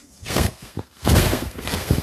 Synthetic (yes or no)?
yes